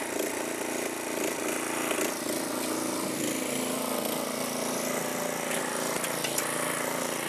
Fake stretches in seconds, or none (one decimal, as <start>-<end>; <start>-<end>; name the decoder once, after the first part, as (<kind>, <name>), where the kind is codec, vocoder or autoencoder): none